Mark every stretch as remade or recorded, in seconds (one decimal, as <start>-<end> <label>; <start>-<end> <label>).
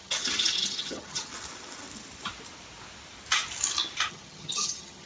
0.0-1.3 remade; 1.3-4.1 recorded; 4.1-5.1 remade